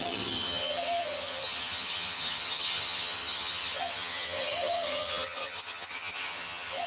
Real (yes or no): no